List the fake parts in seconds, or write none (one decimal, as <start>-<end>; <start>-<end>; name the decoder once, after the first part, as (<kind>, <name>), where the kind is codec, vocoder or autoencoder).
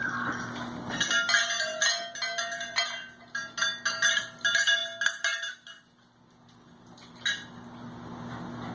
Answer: none